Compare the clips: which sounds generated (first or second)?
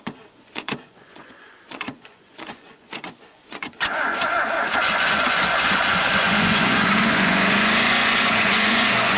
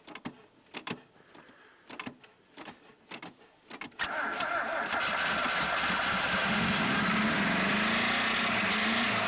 first